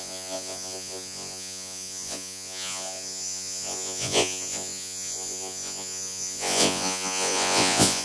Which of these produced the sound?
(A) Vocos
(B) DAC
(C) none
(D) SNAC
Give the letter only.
A